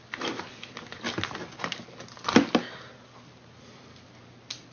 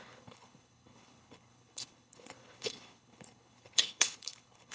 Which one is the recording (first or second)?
first